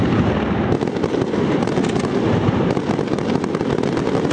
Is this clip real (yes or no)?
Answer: yes